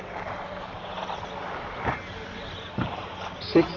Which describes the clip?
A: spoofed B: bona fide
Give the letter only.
B